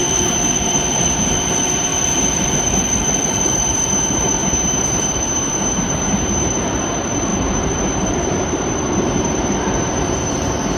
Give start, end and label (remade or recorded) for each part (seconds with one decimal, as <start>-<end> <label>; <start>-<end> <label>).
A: 0.0-1.9 remade; 1.9-3.5 recorded; 3.5-10.8 remade

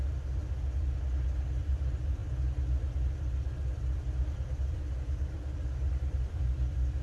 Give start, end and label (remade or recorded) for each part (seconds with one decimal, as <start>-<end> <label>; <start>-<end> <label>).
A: 0.0-0.4 remade; 0.4-1.6 recorded; 1.6-7.0 remade

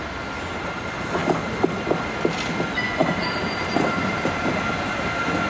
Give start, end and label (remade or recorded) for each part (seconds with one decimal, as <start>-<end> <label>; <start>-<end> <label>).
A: 0.0-3.0 recorded; 3.0-4.5 remade; 4.5-5.5 recorded

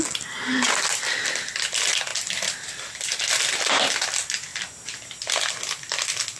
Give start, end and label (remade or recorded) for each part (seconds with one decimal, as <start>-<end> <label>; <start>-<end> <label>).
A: 0.0-6.4 recorded

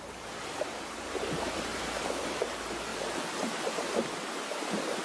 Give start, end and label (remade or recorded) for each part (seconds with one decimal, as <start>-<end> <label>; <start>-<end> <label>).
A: 0.0-1.7 recorded; 1.7-2.4 remade; 2.4-2.9 recorded; 2.9-3.7 remade; 3.7-5.0 recorded

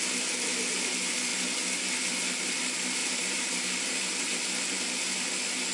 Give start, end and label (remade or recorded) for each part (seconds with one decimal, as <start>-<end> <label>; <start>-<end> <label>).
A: 0.0-3.0 recorded; 3.0-4.0 remade; 4.0-5.7 recorded